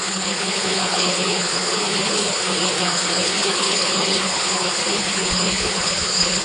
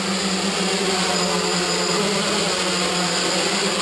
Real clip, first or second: second